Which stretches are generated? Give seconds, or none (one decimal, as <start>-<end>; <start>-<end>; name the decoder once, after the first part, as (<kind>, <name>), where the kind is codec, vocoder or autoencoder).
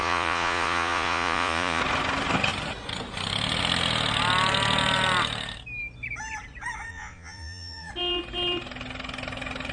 0.0-1.8 (vocoder, Vocos); 6.9-7.9